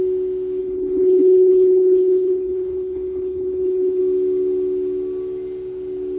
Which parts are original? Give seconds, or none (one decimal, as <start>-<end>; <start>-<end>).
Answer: 0.0-0.6; 4.0-6.2